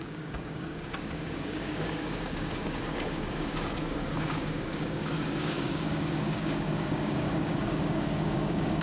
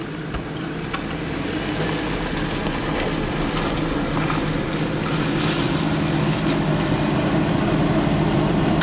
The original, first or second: second